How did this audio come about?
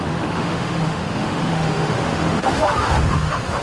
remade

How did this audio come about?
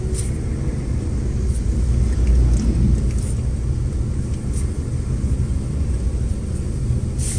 recorded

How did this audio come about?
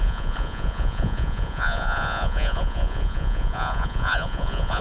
remade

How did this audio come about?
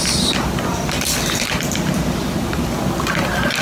recorded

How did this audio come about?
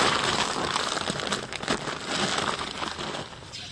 recorded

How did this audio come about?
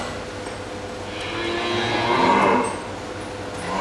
recorded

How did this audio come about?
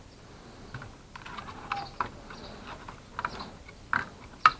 recorded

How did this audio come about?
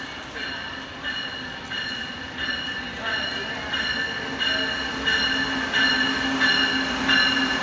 recorded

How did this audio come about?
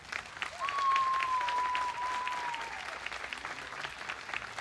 recorded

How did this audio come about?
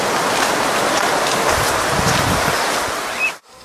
recorded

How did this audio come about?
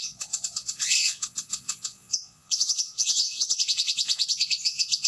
remade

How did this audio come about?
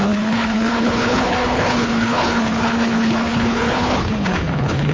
remade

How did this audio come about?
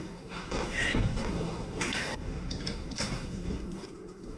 remade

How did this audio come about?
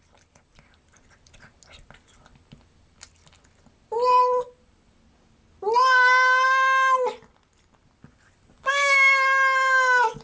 recorded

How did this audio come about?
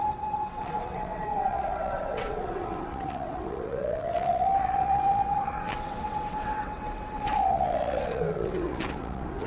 remade